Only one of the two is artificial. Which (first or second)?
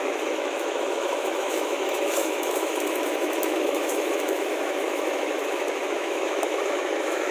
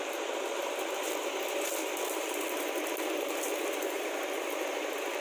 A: first